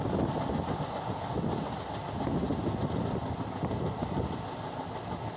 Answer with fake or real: real